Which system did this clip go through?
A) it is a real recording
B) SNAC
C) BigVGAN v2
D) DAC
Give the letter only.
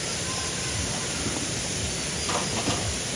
A